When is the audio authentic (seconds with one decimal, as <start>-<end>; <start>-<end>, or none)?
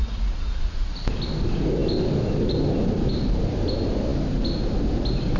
0.9-5.4